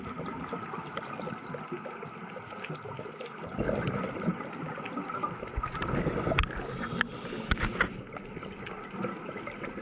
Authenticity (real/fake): real